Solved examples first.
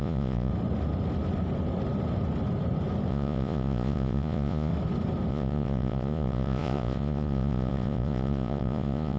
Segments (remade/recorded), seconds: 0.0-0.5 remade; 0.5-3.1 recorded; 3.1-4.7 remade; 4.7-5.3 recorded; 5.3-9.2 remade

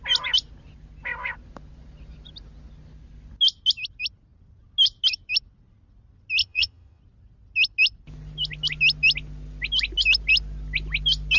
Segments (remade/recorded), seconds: 0.0-6.4 recorded; 6.4-7.0 remade; 7.0-11.4 recorded

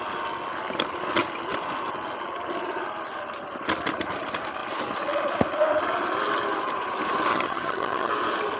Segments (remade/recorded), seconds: 0.0-7.3 recorded; 7.3-8.1 remade; 8.1-8.6 recorded

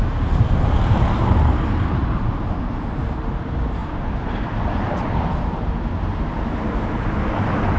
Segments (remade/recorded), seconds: 0.0-7.8 recorded

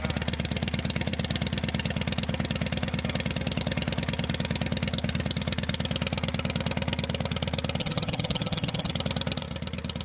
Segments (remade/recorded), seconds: 0.0-7.8 recorded; 7.8-8.9 remade; 8.9-10.0 recorded